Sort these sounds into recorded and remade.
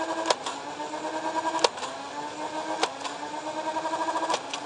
recorded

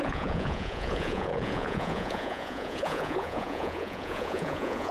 remade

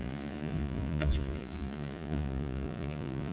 remade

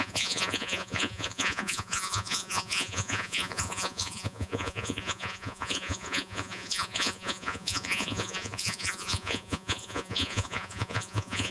remade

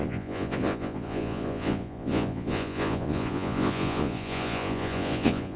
remade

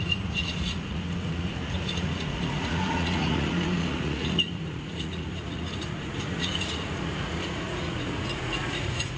remade